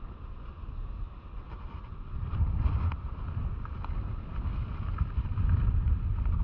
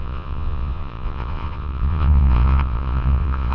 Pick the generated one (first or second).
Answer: second